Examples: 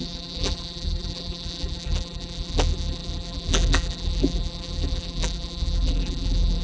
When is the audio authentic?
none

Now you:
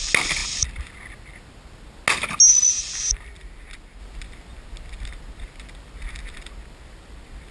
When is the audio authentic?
0.0-7.5

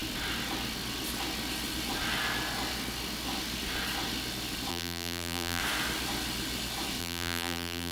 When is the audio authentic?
0.0-4.7; 5.6-7.0

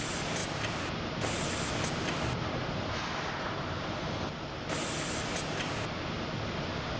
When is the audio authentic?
0.0-7.0

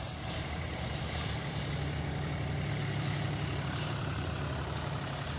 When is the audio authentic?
1.4-2.7

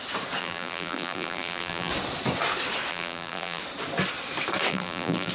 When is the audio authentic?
0.0-0.4; 1.9-2.9; 3.6-4.7

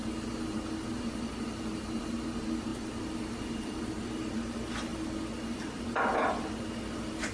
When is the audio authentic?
0.0-2.7; 4.3-4.9